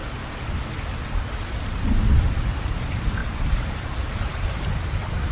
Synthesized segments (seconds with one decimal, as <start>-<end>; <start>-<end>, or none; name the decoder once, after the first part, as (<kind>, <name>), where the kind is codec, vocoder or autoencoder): 3.2-4.6 (vocoder, BigVGAN v2)